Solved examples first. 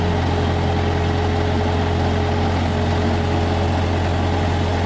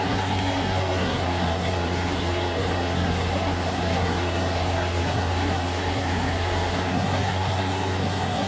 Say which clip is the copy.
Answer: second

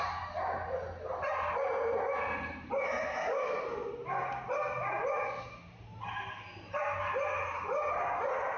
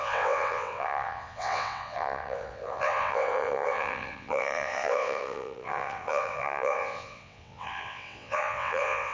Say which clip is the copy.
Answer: second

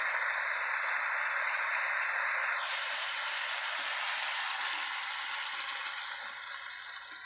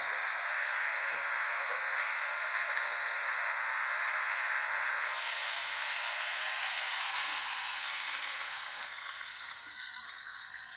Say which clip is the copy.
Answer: second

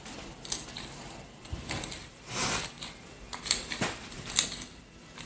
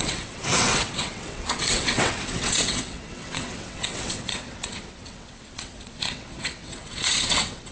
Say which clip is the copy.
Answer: second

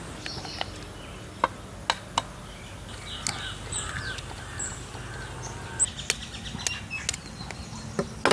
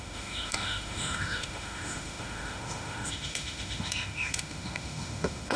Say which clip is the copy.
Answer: second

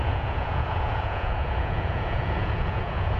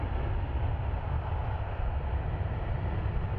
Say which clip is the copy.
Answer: first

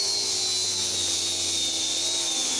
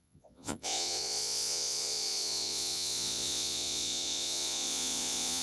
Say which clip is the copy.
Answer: second